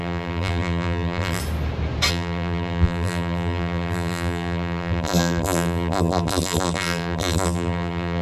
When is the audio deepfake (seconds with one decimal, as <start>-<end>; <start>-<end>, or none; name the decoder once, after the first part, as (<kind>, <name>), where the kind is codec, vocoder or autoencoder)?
0.0-1.4 (vocoder, BigVGAN v2); 2.1-8.2